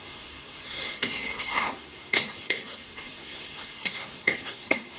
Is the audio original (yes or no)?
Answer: no